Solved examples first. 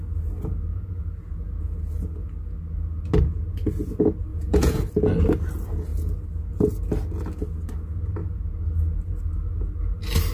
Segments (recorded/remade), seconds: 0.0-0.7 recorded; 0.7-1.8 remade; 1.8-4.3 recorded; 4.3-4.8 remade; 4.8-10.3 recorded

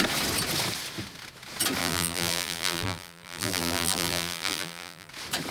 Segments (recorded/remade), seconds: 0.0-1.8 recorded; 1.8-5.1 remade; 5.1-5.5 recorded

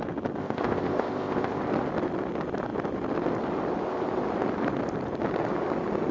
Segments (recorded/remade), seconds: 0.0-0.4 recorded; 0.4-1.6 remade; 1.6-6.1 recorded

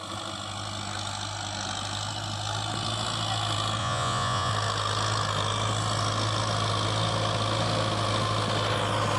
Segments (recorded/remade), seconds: 0.0-3.8 recorded; 3.8-4.5 remade; 4.5-9.2 recorded

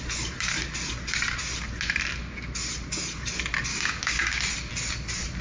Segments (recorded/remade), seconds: 0.0-3.7 recorded; 3.7-4.4 remade; 4.4-5.4 recorded